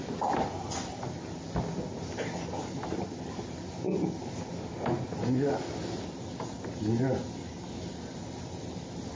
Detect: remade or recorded recorded